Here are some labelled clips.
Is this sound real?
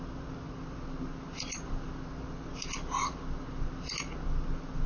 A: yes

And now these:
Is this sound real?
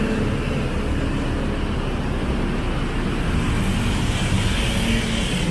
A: yes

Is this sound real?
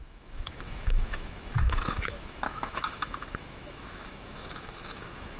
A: no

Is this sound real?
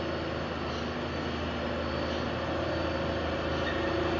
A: yes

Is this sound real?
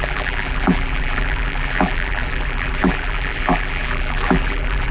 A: no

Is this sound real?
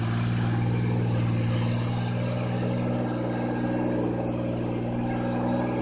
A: yes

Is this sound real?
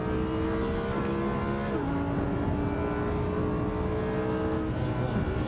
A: yes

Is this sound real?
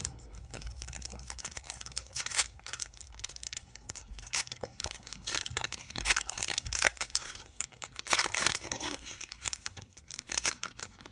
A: no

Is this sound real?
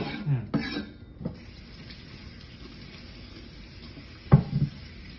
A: yes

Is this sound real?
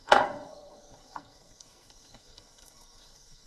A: no